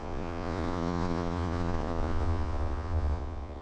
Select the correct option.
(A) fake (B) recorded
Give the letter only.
A